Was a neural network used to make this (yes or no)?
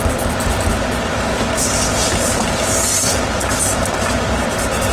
no